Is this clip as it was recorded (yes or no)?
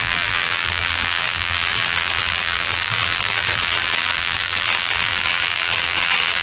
no